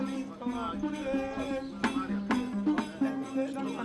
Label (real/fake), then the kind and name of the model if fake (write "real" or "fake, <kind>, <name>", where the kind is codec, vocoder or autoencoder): real